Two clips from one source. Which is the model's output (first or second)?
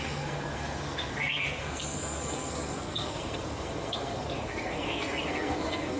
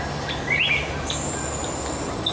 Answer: first